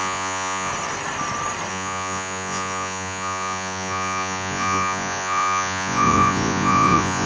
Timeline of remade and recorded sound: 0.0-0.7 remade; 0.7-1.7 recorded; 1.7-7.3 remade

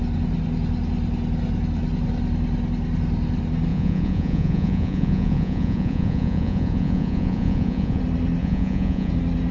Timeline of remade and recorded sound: 0.0-3.7 recorded; 3.7-8.0 remade; 8.0-8.4 recorded; 8.4-9.1 remade; 9.1-9.5 recorded